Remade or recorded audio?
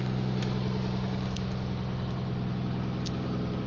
recorded